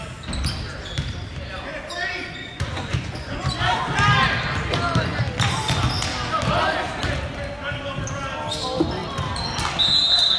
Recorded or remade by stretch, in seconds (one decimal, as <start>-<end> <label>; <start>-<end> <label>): 0.0-2.2 recorded; 2.2-3.7 remade; 3.7-10.4 recorded